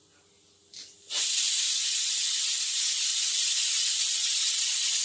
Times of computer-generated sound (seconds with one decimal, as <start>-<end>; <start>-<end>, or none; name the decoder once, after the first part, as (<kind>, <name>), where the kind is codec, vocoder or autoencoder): 3.1-4.3 (vocoder, BigVGAN v2)